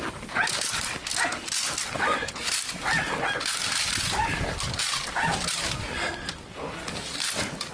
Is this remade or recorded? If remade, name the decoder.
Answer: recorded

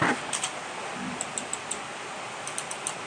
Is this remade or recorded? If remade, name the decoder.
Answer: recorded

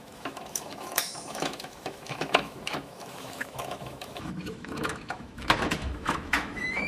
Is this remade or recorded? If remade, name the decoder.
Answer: remade, autoencoder, DAC-VAE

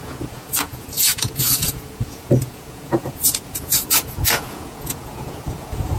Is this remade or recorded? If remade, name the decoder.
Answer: remade, vocoder, Vocos